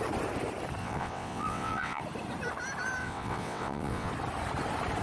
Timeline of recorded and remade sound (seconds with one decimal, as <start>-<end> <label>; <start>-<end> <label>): 0.0-0.8 recorded; 0.8-2.0 remade; 2.0-3.0 recorded; 3.0-4.1 remade; 4.1-5.0 recorded

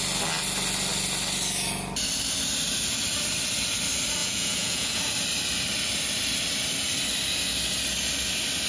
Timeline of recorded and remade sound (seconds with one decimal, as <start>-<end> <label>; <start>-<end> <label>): 0.0-4.2 recorded; 4.2-5.0 remade; 5.0-8.7 recorded